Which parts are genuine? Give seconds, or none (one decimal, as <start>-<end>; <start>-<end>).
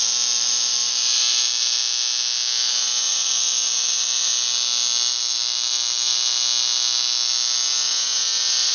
1.8-3.1; 4.3-5.1; 6.1-8.2